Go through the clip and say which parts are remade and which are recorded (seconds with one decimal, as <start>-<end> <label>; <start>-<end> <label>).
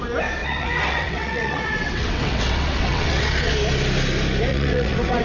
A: 0.0-0.4 recorded; 0.4-3.5 remade; 3.5-4.5 recorded; 4.5-5.2 remade